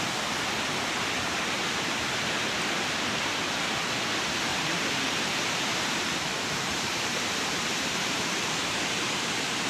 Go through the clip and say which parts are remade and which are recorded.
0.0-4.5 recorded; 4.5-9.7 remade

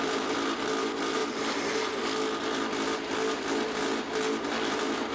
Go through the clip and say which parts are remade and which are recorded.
0.0-1.2 recorded; 1.2-1.8 remade; 1.8-5.1 recorded

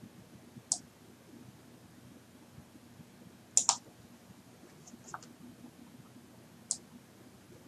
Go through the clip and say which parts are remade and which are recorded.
0.0-7.7 recorded

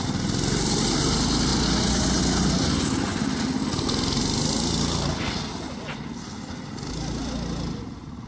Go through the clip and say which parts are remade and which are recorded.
0.0-8.3 recorded

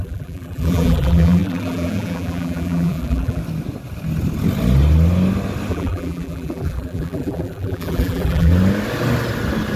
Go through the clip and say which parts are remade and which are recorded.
0.0-3.4 remade; 3.4-5.7 recorded; 5.7-8.5 remade; 8.5-9.8 recorded

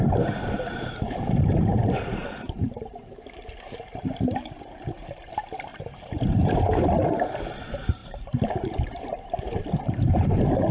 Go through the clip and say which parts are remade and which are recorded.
0.0-10.7 remade

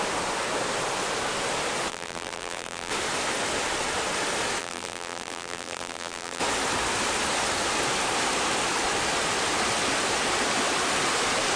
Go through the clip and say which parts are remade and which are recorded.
0.0-1.9 recorded; 1.9-2.9 remade; 2.9-4.6 recorded; 4.6-6.4 remade; 6.4-11.6 recorded

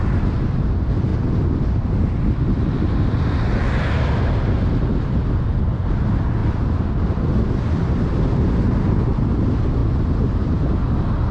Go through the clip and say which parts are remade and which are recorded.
0.0-11.3 recorded